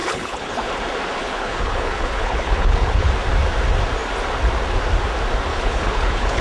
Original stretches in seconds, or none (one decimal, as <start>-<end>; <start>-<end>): 0.7-1.2; 3.1-5.5